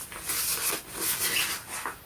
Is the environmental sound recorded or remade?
recorded